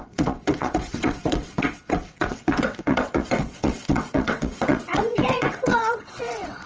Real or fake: fake